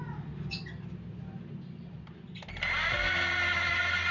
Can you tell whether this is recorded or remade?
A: recorded